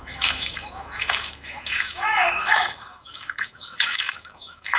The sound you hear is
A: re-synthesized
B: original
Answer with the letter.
A